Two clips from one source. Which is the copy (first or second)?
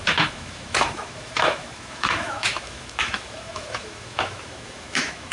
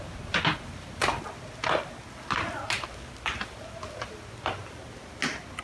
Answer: first